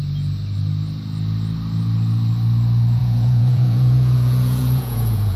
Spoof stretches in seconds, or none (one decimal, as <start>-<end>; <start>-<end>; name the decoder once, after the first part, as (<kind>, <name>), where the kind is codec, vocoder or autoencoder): 3.0-5.4 (vocoder, Vocos)